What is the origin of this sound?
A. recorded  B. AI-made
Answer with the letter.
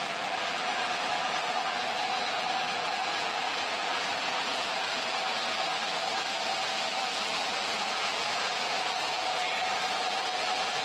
B